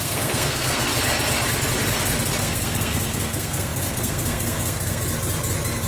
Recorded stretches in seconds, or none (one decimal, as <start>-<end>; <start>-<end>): 0.9-2.4; 5.0-5.9

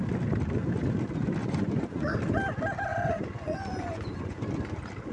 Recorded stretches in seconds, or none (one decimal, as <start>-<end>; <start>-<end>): 0.0-1.4; 2.1-2.9; 4.4-5.1